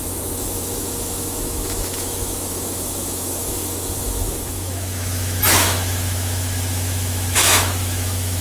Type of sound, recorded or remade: remade